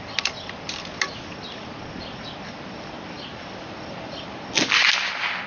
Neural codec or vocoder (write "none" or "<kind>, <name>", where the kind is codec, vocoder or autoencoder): none